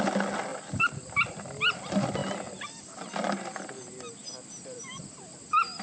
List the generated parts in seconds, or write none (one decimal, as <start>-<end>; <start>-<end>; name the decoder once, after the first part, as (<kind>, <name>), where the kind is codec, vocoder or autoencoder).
none